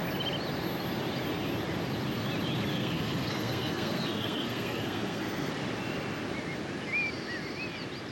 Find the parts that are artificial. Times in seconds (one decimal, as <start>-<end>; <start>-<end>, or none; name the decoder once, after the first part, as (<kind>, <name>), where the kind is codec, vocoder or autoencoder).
2.7-5.5 (codec, SNAC)